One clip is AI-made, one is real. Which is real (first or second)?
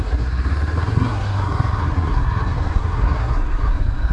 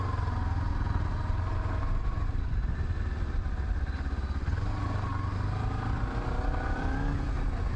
second